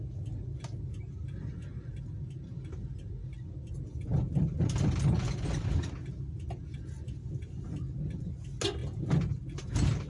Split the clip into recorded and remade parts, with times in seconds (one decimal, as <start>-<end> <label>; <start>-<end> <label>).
0.0-10.1 recorded